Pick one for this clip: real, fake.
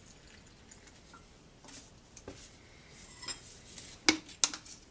real